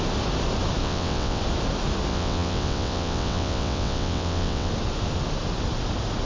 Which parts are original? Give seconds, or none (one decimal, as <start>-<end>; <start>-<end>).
0.0-0.8; 1.4-2.1; 4.7-6.3